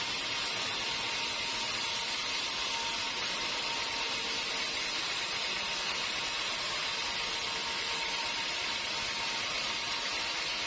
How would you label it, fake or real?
real